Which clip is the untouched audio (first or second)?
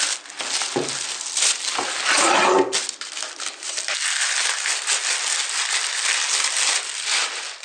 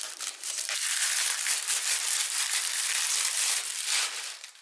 first